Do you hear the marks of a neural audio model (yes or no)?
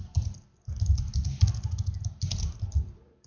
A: no